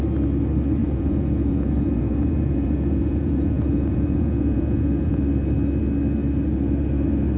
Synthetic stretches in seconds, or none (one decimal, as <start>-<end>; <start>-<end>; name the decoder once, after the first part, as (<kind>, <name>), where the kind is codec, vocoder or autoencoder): 0.8-5.2 (vocoder, Vocos)